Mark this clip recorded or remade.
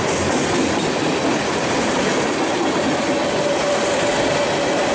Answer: recorded